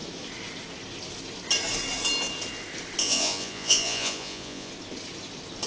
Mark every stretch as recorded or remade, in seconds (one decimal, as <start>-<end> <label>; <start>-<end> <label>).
0.0-3.0 recorded; 3.0-4.7 remade; 4.7-5.7 recorded

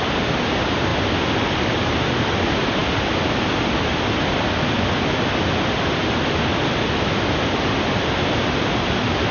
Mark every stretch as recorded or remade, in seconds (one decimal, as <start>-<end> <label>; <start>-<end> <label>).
0.0-9.3 recorded

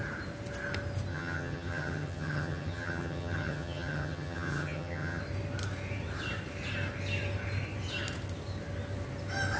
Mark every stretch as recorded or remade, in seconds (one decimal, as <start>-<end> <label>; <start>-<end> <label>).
0.0-1.1 recorded; 1.1-5.2 remade; 5.2-9.6 recorded

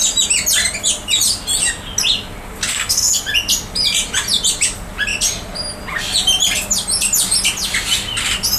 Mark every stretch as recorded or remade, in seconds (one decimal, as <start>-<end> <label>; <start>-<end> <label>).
0.0-2.7 recorded; 2.7-3.2 remade; 3.2-8.6 recorded

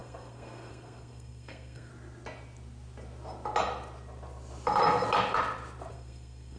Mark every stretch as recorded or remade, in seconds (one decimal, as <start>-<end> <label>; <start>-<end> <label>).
0.0-1.9 remade; 1.9-5.9 recorded; 5.9-6.6 remade

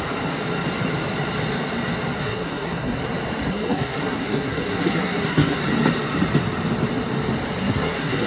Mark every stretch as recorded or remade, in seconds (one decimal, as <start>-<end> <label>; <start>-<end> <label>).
0.0-2.2 recorded; 2.2-3.0 remade; 3.0-3.5 recorded; 3.5-5.6 remade; 5.6-7.6 recorded; 7.6-8.3 remade